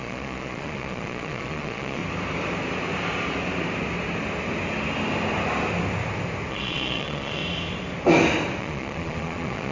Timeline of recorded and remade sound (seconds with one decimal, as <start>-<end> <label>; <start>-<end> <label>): 0.0-2.0 remade; 2.0-6.5 recorded; 6.5-7.4 remade; 7.4-8.6 recorded; 8.6-9.7 remade